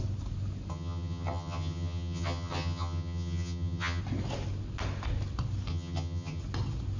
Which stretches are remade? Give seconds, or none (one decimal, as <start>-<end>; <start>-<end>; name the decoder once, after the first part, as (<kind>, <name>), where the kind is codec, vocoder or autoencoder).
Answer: 0.7-4.0 (vocoder, HiFi-GAN); 5.7-6.4